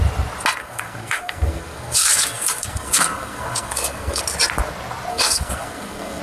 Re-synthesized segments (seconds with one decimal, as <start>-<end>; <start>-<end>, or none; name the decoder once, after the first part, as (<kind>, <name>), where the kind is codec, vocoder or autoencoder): 0.6-4.2 (codec, SNAC); 5.1-6.2